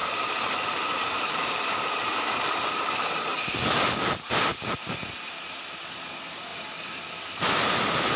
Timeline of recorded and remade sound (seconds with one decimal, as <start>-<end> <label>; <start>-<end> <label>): 0.0-1.7 remade; 1.7-4.5 recorded; 4.5-5.0 remade; 5.0-8.2 recorded